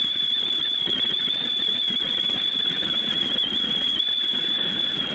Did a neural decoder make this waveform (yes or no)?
yes